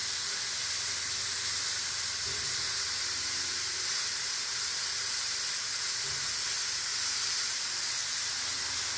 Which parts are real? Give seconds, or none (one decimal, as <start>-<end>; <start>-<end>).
5.2-9.0